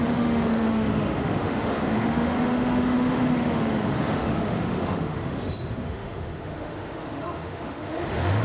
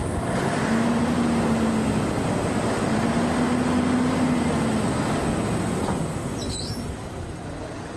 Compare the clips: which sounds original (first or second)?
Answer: second